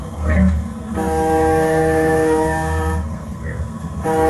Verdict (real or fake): fake